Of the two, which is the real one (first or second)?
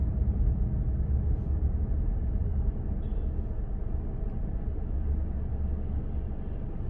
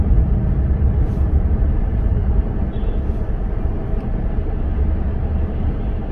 first